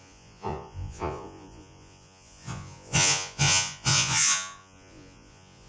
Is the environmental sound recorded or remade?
remade